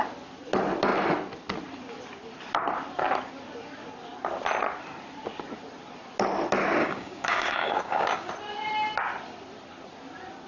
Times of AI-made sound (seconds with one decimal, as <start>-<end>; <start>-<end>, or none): 6.8-8.3